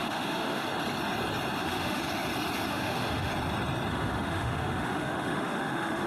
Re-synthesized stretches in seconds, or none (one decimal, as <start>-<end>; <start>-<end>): 0.0-0.7; 1.6-2.0; 2.7-3.3; 3.9-6.1